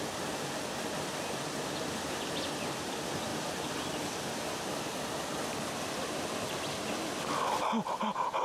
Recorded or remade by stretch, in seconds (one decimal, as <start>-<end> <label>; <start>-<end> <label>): 0.0-8.4 recorded